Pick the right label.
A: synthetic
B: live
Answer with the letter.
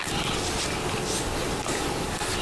B